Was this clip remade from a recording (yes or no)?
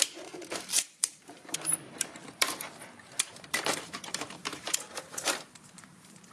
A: yes